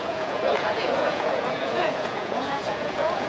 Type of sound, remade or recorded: remade